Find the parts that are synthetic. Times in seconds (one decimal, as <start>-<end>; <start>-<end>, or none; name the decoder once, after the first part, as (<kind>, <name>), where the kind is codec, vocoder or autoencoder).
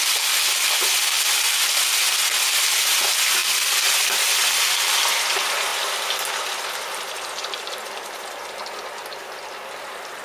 none